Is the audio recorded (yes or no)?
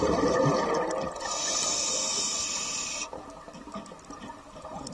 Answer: yes